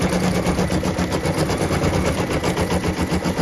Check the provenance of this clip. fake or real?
real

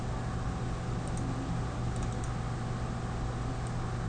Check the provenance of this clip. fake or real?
real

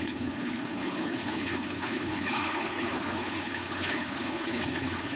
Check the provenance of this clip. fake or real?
fake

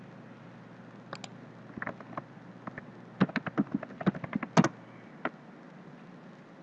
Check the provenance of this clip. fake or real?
real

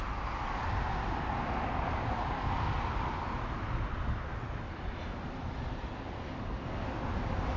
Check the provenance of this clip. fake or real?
real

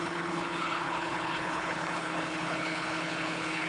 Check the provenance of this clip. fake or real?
fake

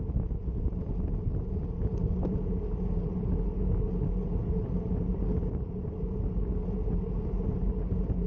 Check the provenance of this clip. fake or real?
real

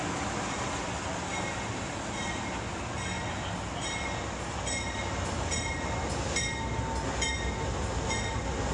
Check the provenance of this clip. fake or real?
real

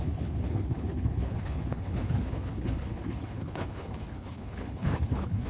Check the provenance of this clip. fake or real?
fake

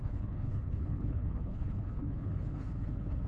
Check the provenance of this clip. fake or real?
fake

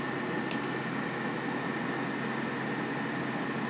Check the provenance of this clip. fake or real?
real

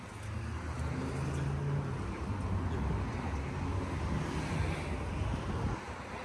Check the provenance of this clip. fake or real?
real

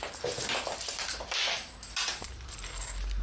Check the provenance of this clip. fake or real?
real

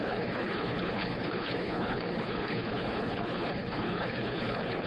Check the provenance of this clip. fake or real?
fake